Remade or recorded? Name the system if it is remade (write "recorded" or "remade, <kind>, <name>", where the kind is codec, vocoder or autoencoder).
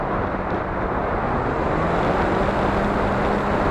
recorded